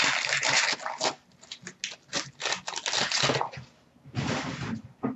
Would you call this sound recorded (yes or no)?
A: yes